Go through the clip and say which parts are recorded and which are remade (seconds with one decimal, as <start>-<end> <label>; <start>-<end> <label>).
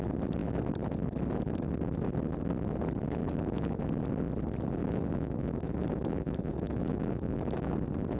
0.0-3.2 recorded; 3.2-3.8 remade; 3.8-4.8 recorded; 4.8-7.7 remade; 7.7-8.2 recorded